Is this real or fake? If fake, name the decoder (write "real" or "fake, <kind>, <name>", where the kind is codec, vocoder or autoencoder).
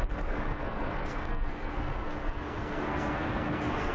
fake, codec, SNAC